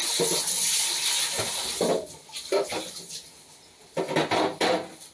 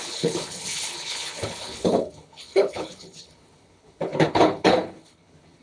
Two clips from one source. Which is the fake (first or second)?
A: second